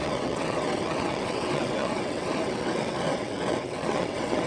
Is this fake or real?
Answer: fake